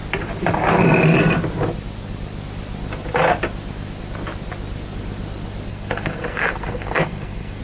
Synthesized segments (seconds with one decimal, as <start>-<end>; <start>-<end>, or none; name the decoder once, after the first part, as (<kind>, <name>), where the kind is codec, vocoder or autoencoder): 5.7-7.6 (codec, SNAC)